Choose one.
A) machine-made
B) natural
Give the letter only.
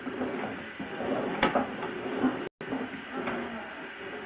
B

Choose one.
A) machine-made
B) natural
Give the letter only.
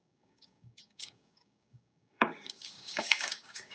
A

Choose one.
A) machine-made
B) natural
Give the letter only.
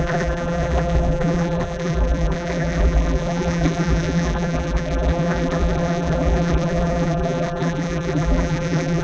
A